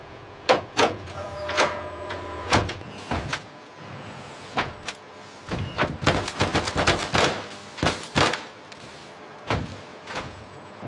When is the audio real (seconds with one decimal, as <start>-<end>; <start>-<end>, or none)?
4.7-9.9